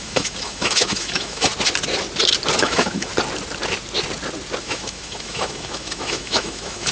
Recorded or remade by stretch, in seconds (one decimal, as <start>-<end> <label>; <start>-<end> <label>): 0.0-1.5 remade; 1.5-2.6 recorded; 2.6-3.1 remade; 3.1-4.6 recorded; 4.6-6.9 remade